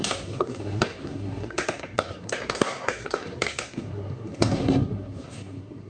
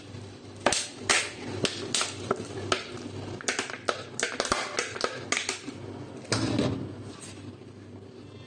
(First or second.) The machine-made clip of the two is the first